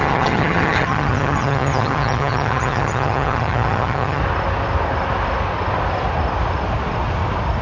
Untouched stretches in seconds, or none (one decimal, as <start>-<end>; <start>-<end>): 4.2-7.6